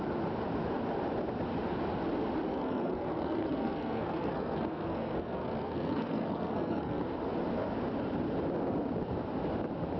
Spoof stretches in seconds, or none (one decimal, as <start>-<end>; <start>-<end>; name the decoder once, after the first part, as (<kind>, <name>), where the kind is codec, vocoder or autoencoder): 2.5-7.0 (codec, SNAC)